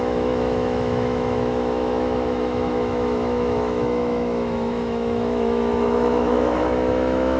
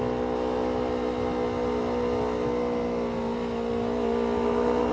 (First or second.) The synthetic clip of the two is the first